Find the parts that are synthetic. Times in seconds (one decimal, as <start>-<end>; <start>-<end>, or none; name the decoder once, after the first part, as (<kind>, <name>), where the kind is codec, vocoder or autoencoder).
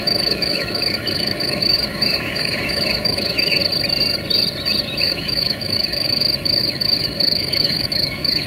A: 0.0-3.6 (autoencoder, DAC-VAE); 5.0-8.5